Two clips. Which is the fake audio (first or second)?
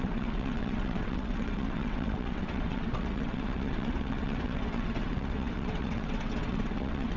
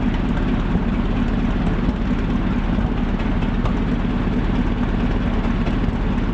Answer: first